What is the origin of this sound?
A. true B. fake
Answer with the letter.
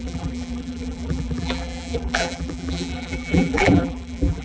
B